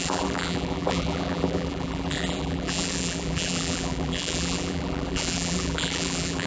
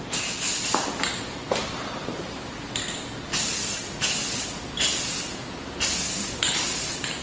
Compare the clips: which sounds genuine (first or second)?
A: second